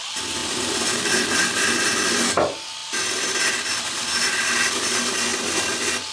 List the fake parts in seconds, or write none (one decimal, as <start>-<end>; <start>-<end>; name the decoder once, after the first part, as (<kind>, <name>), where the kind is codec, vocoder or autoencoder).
0.4-1.0 (vocoder, BigVGAN v2); 5.3-6.1